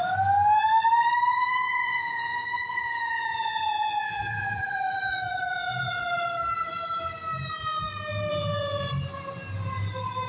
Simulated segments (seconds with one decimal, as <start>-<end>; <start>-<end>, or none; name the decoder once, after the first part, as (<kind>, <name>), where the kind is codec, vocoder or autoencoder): 1.3-4.6 (vocoder, Vocos); 5.5-6.0; 8.3-8.9